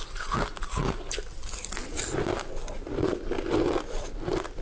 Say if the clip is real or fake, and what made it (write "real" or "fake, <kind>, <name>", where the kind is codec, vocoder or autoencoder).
real